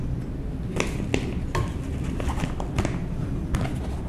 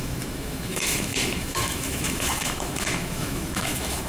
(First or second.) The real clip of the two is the first